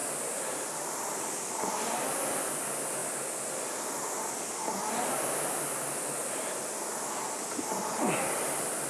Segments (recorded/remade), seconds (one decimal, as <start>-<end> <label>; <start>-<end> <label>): 0.0-2.1 remade; 2.1-3.0 recorded; 3.0-4.9 remade; 4.9-6.2 recorded; 6.2-6.9 remade; 6.9-8.9 recorded